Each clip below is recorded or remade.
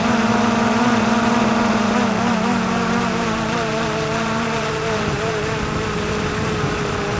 remade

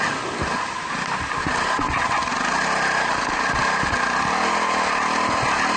recorded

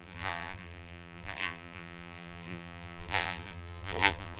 remade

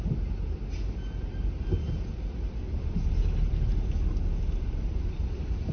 recorded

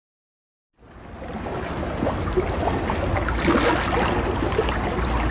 recorded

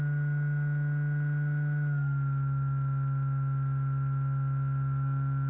recorded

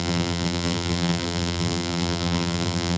remade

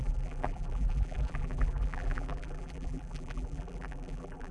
remade